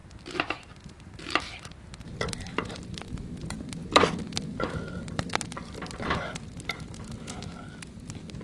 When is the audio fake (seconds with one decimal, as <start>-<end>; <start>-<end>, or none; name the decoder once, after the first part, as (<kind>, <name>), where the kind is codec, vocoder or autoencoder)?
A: none